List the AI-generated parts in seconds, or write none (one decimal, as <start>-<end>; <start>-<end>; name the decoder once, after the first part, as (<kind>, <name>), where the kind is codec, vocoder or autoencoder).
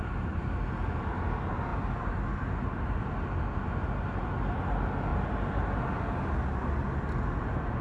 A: none